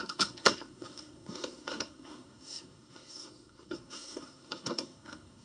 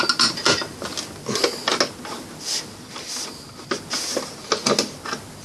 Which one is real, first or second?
second